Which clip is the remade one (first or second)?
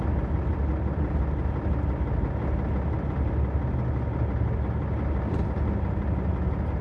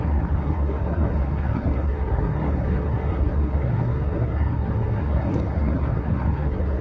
second